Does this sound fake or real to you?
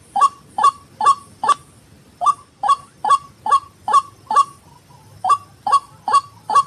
real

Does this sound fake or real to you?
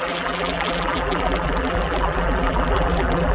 fake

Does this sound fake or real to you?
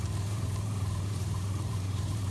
fake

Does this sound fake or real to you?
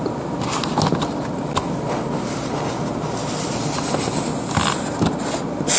real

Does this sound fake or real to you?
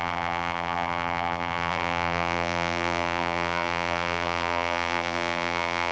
fake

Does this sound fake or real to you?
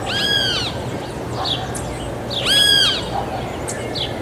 real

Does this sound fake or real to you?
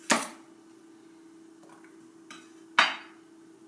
real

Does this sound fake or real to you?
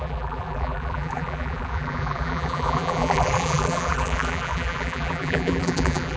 fake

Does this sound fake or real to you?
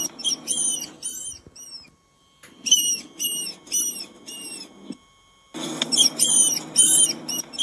real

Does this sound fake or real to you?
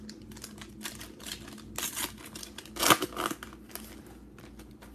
real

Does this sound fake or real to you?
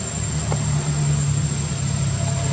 real